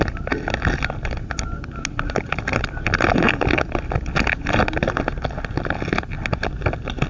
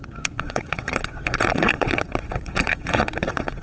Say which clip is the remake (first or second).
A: second